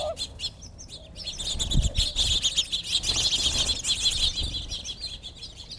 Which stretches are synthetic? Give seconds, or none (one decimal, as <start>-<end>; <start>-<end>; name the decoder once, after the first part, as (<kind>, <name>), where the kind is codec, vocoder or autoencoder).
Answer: none